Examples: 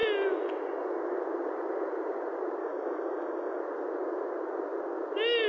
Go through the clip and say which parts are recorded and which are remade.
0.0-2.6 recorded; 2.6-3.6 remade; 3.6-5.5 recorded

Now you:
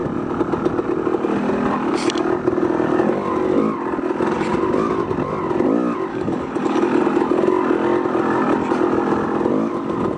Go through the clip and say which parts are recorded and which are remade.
0.0-6.1 recorded; 6.1-7.0 remade; 7.0-10.2 recorded

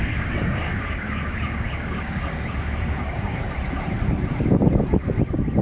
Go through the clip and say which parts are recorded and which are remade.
0.0-3.4 remade; 3.4-5.6 recorded

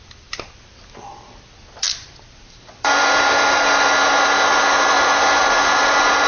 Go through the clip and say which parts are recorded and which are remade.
0.0-6.3 recorded